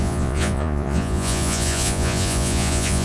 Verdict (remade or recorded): remade